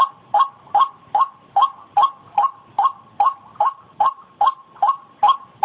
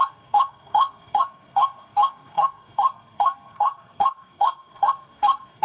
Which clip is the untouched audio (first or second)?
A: first